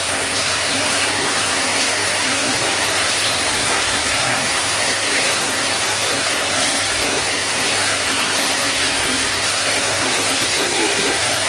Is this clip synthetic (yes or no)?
yes